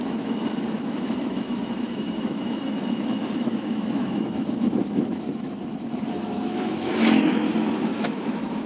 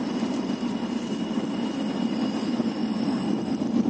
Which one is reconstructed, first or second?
first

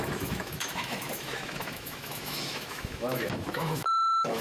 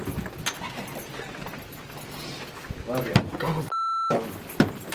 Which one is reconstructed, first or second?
first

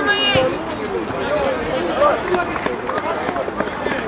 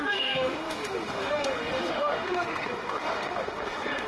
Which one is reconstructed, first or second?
second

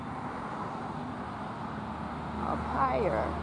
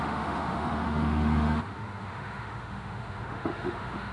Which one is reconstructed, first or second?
second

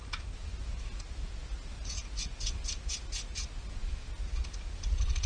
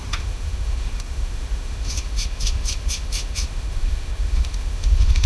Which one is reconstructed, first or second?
second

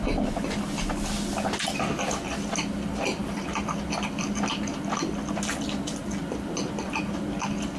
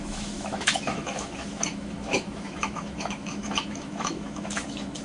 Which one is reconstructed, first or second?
second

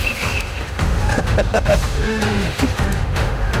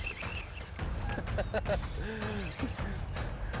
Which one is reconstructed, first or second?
first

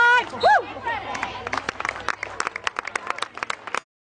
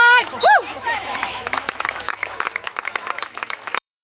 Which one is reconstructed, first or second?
second